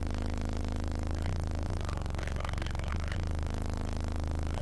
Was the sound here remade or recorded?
recorded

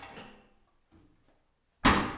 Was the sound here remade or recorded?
recorded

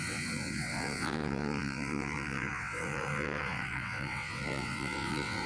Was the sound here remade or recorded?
remade